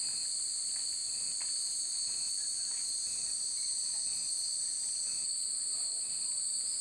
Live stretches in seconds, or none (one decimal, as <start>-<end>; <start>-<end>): 0.0-6.8